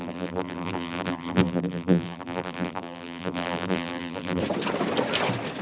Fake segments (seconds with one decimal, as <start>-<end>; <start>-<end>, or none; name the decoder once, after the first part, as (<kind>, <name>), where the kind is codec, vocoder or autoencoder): 0.0-4.4 (vocoder, BigVGAN v2)